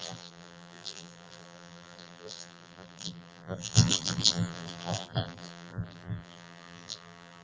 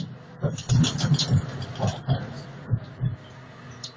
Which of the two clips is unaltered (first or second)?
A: second